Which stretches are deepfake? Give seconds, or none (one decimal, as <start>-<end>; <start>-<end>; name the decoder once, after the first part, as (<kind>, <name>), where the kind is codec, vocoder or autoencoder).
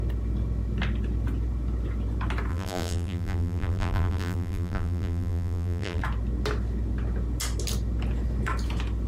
2.5-6.0 (vocoder, BigVGAN v2)